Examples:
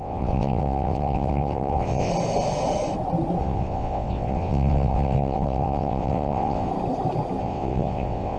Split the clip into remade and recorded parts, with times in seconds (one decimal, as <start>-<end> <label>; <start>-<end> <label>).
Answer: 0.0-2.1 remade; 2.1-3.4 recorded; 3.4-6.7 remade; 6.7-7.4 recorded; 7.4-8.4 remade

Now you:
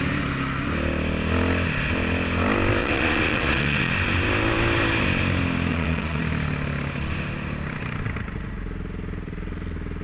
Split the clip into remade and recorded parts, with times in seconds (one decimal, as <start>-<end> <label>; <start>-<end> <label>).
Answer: 0.0-2.8 recorded; 2.8-3.9 remade; 3.9-5.7 recorded; 5.7-6.2 remade; 6.2-10.0 recorded

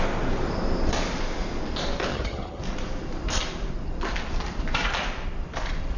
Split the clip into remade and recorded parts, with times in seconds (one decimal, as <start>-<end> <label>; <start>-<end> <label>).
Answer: 0.0-2.1 recorded; 2.1-2.6 remade; 2.6-6.0 recorded

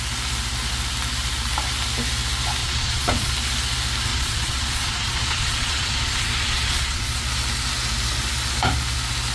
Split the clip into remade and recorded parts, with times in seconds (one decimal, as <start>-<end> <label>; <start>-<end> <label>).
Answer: 0.0-2.6 recorded; 2.6-3.3 remade; 3.3-4.1 recorded; 4.1-7.2 remade; 7.2-9.3 recorded

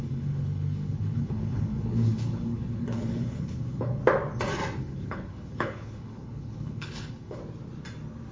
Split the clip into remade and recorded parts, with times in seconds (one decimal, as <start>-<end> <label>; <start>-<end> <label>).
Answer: 0.0-4.0 remade; 4.0-4.8 recorded; 4.8-7.4 remade; 7.4-8.3 recorded

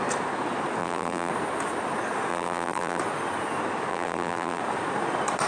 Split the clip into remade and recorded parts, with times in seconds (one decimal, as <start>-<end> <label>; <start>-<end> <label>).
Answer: 0.0-0.8 recorded; 0.8-1.3 remade; 1.3-2.3 recorded; 2.3-3.0 remade; 3.0-3.9 recorded; 3.9-4.6 remade; 4.6-5.5 recorded